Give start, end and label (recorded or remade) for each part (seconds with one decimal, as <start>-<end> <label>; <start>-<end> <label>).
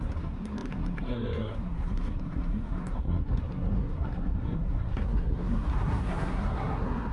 0.0-7.1 remade